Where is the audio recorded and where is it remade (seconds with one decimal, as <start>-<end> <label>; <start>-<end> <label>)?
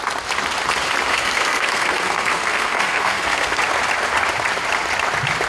0.0-1.1 recorded; 1.1-3.6 remade; 3.6-5.5 recorded